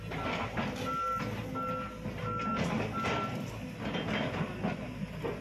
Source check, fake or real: real